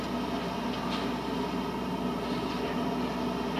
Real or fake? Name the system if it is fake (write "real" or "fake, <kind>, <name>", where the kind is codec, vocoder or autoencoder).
real